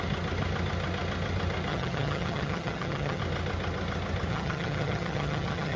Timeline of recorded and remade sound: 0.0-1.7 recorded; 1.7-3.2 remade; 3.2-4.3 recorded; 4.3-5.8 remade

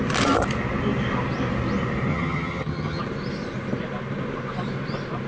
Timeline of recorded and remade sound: 0.0-2.1 recorded; 2.1-3.0 remade; 3.0-5.3 recorded

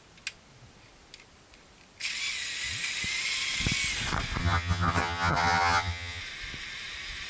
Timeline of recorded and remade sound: 0.0-4.4 recorded; 4.4-6.2 remade; 6.2-7.3 recorded

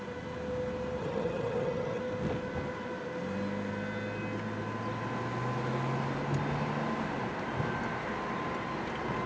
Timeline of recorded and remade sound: 0.0-1.0 recorded; 1.0-2.0 remade; 2.0-9.3 recorded

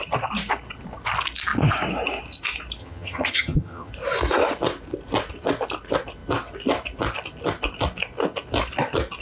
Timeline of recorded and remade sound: 0.0-2.8 recorded; 2.8-3.9 remade; 3.9-9.2 recorded